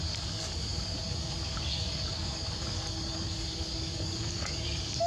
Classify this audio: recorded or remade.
remade